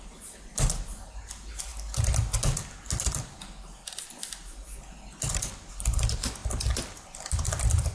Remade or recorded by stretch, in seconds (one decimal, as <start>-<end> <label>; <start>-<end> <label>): 0.0-7.9 recorded